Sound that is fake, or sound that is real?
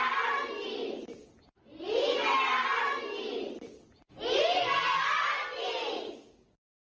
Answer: real